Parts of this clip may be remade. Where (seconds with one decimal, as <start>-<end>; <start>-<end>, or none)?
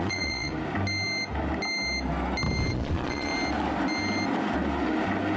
0.0-0.5; 2.7-3.3